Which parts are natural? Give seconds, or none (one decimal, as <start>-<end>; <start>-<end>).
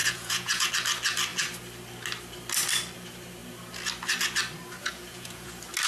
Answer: 0.7-4.8; 5.5-5.9